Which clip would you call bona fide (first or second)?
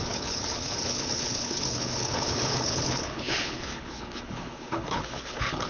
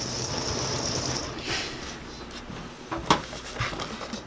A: second